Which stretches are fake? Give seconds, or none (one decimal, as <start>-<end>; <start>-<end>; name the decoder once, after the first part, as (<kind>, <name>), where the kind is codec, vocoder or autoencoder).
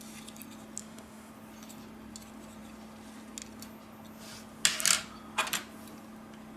0.8-1.3 (autoencoder, DAC-VAE)